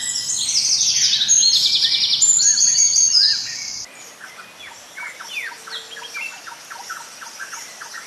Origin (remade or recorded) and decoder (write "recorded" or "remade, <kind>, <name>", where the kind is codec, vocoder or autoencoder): recorded